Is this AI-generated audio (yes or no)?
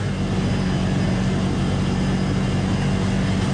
no